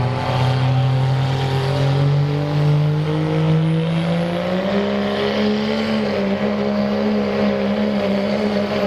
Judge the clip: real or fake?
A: real